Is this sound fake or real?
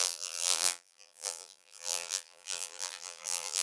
fake